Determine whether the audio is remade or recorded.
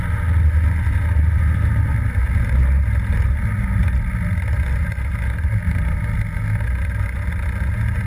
recorded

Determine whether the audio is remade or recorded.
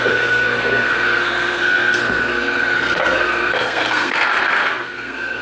remade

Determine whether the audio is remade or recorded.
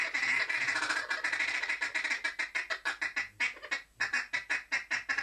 recorded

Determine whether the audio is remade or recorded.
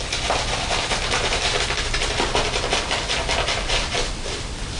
recorded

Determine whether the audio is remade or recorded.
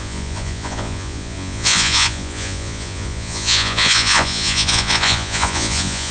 remade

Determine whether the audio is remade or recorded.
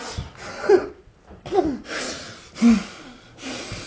recorded